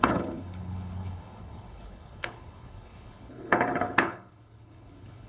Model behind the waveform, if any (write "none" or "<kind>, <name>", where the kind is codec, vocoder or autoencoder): codec, HILCodec